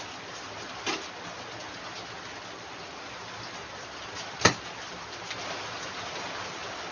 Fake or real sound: real